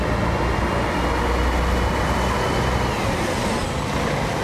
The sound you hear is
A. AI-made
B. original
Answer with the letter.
B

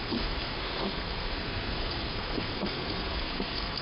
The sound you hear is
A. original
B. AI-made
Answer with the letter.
B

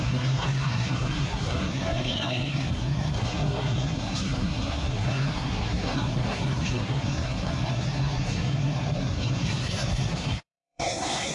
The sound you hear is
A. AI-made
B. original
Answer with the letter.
A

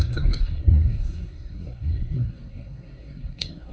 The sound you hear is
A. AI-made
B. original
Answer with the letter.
A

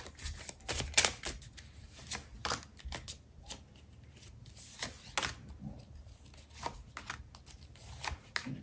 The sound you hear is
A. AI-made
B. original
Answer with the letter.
B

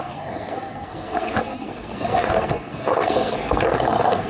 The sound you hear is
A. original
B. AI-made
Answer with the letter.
B